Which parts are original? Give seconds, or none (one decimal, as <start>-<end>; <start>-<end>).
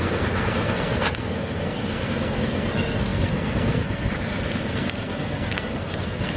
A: none